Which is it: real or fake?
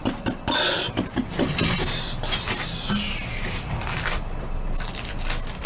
real